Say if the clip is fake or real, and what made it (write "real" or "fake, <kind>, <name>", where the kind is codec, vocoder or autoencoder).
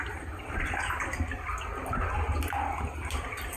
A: real